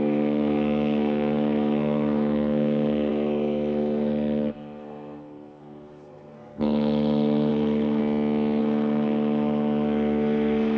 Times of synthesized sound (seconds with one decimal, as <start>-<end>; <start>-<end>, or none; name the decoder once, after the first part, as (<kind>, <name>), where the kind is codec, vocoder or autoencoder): 0.0-8.0 (codec, SNAC); 8.6-10.8